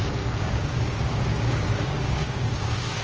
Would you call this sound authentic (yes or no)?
no